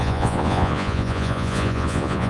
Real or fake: fake